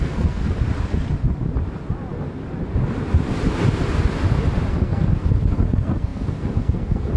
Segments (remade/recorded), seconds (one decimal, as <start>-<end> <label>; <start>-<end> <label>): 0.0-0.4 remade; 0.4-4.7 recorded; 4.7-7.2 remade